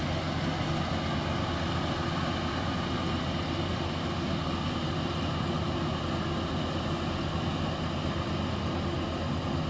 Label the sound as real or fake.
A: real